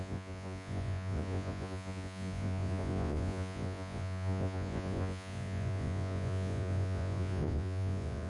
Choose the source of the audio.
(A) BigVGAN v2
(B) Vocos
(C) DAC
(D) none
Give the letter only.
B